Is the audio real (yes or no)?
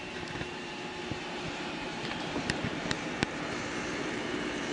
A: no